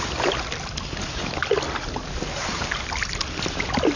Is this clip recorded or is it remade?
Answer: recorded